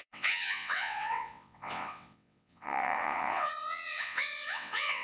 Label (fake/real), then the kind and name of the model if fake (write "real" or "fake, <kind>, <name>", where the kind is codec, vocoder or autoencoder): fake, vocoder, WaveNeXt